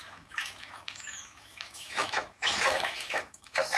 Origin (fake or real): fake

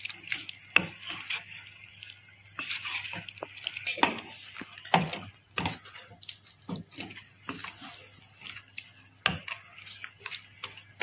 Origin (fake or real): real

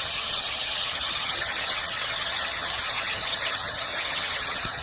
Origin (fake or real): fake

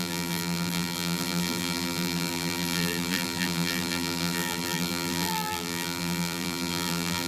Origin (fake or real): fake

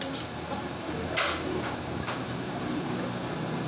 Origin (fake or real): real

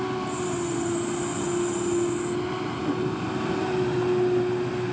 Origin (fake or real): real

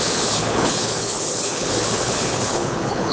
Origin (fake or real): fake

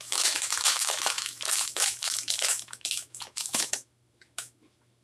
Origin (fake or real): fake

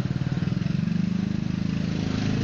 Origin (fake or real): real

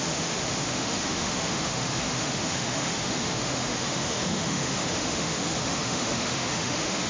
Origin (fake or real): fake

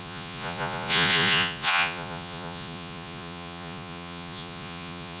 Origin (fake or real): fake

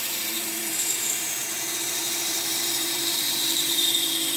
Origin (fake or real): fake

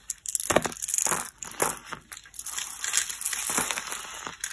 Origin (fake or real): real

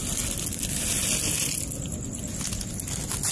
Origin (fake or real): real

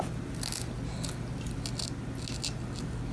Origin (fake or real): real